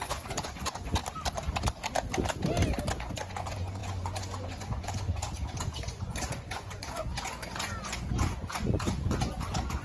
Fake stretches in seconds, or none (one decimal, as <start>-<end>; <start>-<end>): 0.0-1.0; 2.9-9.8